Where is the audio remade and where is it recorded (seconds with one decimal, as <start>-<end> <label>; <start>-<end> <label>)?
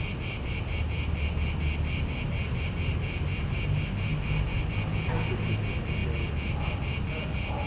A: 0.0-7.7 recorded